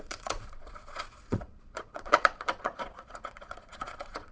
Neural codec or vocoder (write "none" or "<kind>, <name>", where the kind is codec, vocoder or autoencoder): vocoder, Vocos